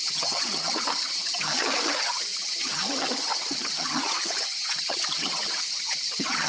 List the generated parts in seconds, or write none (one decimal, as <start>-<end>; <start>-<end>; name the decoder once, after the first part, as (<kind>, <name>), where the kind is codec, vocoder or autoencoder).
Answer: 0.0-6.5 (vocoder, HiFi-GAN)